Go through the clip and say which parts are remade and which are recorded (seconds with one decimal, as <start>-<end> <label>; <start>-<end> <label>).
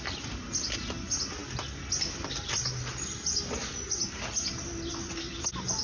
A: 0.0-5.8 recorded